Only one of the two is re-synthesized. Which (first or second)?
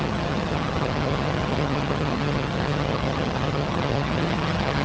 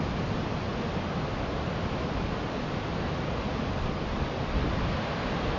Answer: first